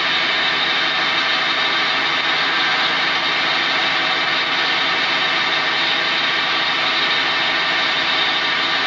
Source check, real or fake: real